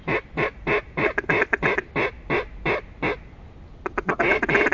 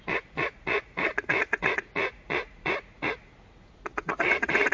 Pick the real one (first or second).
first